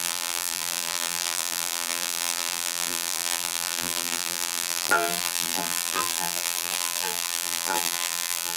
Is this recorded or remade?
remade